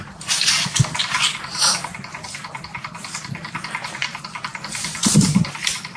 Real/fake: real